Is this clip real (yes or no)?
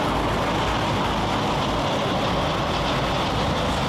yes